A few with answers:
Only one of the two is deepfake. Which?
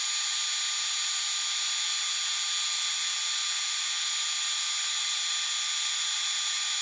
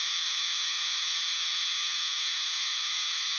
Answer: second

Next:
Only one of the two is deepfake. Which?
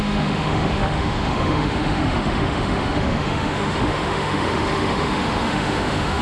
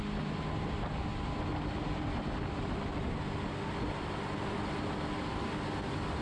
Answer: first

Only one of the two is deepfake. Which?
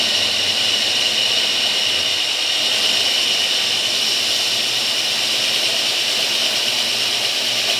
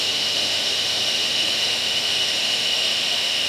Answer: second